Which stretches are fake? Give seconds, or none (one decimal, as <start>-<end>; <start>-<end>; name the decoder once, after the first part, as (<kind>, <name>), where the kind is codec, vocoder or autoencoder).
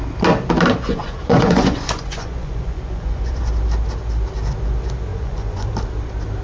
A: 0.9-3.5 (vocoder, Vocos); 5.1-5.7